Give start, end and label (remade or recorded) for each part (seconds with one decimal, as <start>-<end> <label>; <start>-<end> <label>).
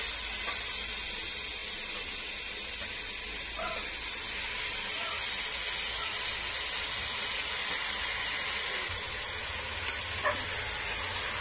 0.0-11.4 recorded